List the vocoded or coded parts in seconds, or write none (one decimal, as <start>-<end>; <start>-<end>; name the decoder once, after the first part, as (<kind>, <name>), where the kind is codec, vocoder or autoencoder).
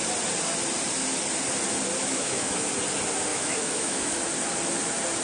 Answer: 2.0-2.7 (autoencoder, DAC-VAE); 3.3-4.2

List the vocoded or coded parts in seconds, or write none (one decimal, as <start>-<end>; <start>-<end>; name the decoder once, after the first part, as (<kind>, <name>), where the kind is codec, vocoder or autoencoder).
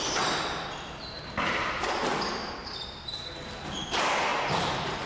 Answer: 2.6-3.6 (vocoder, BigVGAN v2)